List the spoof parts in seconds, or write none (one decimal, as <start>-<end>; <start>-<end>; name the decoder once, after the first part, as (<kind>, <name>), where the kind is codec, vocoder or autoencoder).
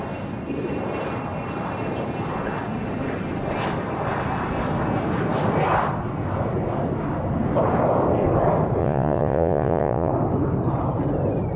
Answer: 8.8-10.1 (vocoder, Vocos)